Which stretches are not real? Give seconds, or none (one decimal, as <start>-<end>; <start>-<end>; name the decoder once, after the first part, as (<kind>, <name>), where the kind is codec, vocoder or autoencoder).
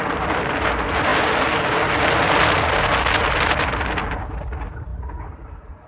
4.9-5.9 (vocoder, BigVGAN v2)